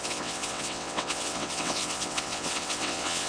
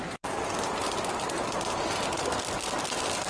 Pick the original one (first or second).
second